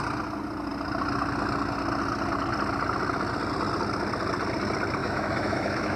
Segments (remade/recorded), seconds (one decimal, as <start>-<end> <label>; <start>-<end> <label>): 0.0-5.0 recorded; 5.0-6.0 remade